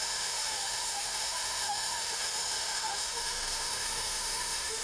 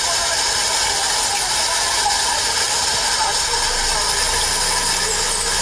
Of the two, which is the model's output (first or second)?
first